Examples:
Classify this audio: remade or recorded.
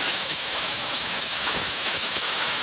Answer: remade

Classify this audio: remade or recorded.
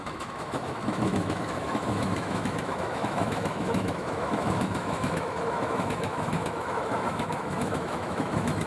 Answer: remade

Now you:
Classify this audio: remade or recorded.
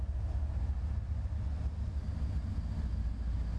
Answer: recorded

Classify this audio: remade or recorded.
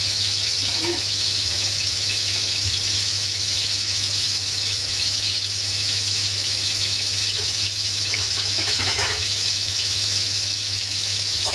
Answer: remade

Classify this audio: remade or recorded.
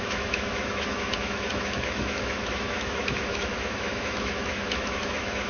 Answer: remade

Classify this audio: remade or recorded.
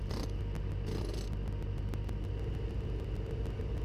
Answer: recorded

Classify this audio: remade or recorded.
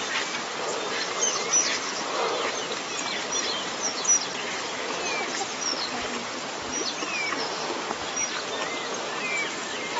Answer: recorded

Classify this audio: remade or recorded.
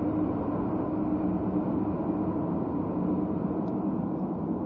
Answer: recorded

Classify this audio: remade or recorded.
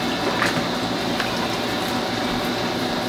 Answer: recorded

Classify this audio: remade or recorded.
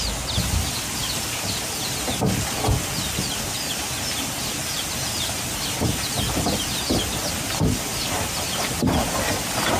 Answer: recorded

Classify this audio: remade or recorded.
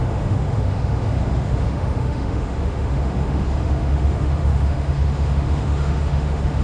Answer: remade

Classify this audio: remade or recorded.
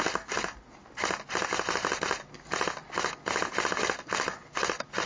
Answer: recorded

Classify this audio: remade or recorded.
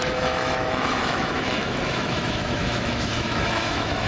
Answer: remade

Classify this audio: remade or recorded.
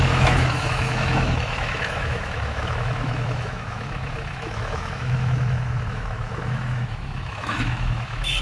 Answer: remade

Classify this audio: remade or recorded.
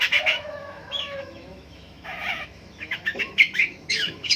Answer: remade